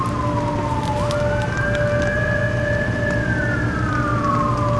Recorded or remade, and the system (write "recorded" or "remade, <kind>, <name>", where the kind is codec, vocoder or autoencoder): recorded